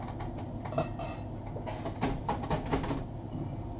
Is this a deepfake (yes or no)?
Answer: no